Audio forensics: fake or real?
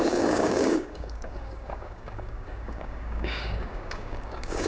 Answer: fake